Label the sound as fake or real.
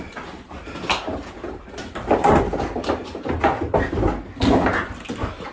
real